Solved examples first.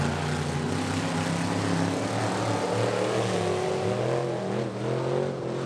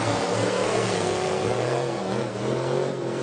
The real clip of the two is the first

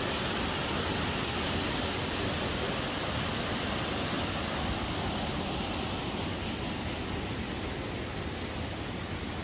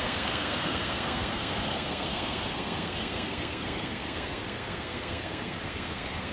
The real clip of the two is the first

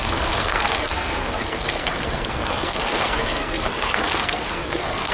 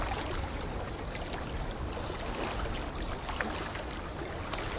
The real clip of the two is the second